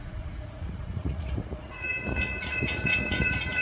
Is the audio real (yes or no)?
no